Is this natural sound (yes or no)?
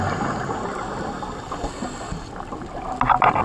yes